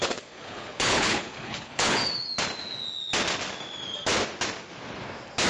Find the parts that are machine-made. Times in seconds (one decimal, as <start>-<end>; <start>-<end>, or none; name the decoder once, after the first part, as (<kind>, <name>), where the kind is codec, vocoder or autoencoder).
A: 0.0-2.0 (codec, HILCodec)